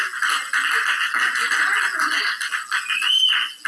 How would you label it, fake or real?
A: real